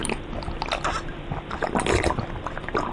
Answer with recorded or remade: recorded